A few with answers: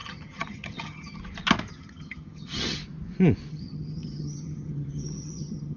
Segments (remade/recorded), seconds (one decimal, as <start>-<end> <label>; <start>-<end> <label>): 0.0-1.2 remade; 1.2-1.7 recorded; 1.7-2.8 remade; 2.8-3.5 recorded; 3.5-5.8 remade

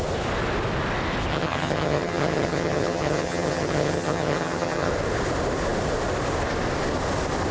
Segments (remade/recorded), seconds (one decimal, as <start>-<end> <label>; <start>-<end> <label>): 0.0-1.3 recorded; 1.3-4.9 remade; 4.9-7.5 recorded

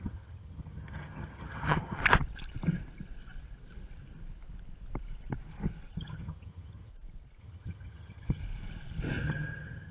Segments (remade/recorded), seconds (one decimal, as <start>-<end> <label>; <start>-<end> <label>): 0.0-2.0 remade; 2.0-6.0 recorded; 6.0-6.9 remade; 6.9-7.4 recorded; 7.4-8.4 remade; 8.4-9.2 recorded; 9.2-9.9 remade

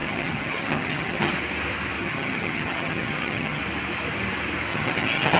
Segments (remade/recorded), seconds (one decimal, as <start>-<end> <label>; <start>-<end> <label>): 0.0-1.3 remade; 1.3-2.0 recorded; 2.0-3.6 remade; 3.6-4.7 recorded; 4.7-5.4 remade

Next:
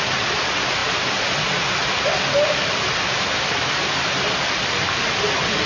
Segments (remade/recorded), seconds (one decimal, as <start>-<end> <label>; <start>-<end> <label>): 0.0-5.7 recorded